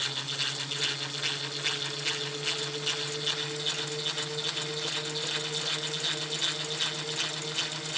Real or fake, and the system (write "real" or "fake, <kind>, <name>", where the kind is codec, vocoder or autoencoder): real